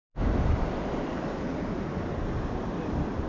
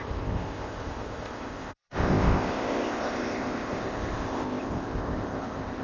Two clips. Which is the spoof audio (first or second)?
second